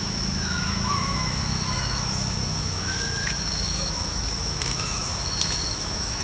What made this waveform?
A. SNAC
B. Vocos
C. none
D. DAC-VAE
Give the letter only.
D